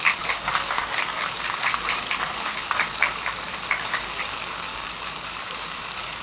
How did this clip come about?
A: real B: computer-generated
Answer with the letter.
B